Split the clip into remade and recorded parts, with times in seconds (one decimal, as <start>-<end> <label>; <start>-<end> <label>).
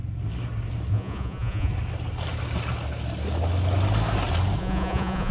0.0-0.9 recorded; 0.9-1.7 remade; 1.7-4.6 recorded; 4.6-5.3 remade